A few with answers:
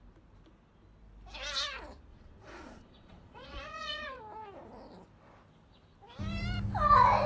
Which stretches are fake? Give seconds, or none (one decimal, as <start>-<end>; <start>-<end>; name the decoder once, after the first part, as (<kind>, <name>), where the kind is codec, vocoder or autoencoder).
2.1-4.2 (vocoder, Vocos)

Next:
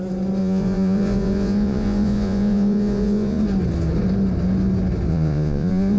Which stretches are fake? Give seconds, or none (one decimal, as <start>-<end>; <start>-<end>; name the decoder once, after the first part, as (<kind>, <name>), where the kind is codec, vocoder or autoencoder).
0.4-3.4 (vocoder, Vocos); 5.1-6.0

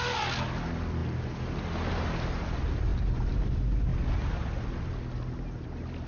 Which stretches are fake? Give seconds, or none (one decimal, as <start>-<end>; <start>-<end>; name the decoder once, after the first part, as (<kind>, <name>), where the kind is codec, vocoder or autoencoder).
none

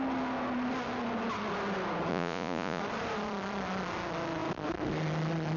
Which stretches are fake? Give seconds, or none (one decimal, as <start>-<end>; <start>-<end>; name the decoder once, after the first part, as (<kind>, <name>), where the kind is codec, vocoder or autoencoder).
2.1-2.8 (vocoder, Vocos)

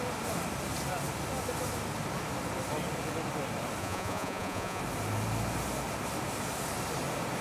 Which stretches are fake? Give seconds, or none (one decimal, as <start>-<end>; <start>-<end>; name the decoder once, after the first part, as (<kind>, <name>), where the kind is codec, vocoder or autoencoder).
3.8-4.8 (vocoder, Vocos)

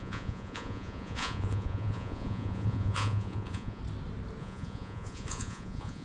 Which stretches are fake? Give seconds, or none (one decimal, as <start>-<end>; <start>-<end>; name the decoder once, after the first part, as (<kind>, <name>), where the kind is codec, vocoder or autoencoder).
0.0-3.8 (vocoder, Vocos); 4.4-6.0

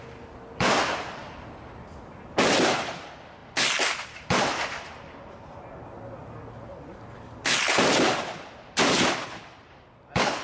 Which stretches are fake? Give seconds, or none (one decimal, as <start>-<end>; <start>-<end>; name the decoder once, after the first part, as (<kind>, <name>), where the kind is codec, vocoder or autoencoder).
none